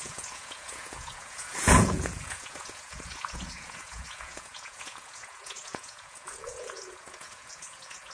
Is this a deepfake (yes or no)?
yes